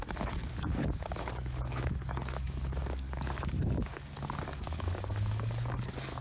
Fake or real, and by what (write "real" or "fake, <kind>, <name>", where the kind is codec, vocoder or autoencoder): fake, codec, DAC